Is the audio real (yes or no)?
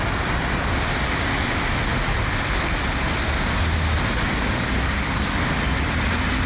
yes